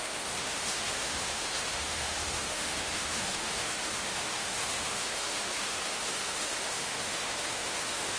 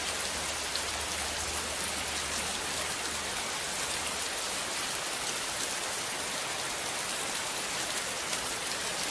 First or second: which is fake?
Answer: first